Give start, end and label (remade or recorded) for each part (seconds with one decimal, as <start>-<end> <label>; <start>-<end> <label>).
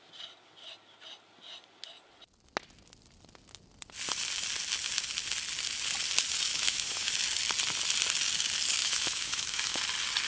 0.0-6.5 recorded; 6.5-7.1 remade; 7.1-8.8 recorded; 8.8-9.8 remade; 9.8-10.3 recorded